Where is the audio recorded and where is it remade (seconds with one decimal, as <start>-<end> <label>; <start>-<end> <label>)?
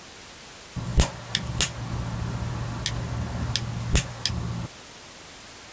0.0-5.7 recorded